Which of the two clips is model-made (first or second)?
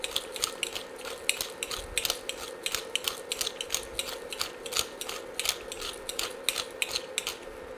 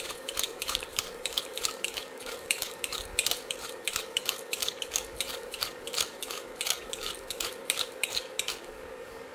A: second